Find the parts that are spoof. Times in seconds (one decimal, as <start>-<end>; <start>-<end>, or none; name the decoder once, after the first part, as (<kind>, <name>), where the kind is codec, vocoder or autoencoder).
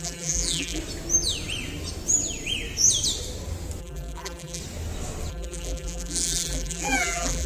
0.0-0.8 (vocoder, BigVGAN v2); 3.8-4.6; 5.3-7.5